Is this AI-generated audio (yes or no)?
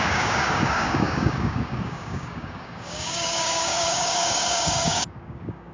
yes